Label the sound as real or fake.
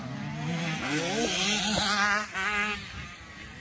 real